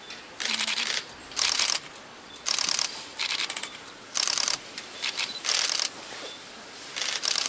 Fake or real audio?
real